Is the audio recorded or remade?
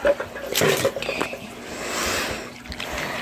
recorded